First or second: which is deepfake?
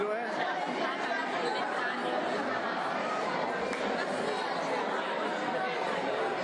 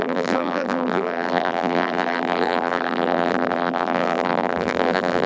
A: second